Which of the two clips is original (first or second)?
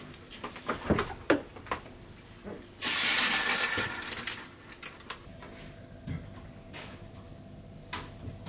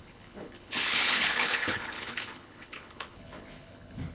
first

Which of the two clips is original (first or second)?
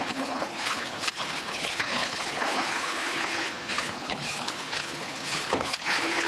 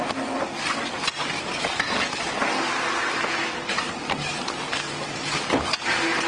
second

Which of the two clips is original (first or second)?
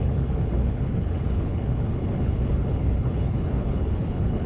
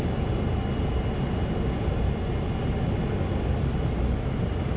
second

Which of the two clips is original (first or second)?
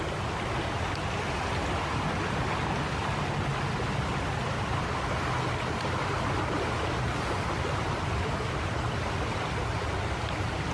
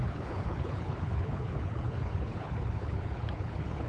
first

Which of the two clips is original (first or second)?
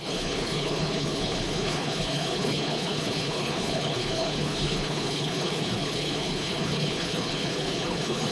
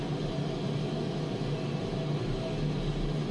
second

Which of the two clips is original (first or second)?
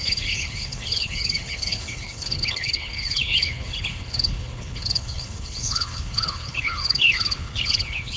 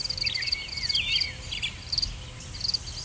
second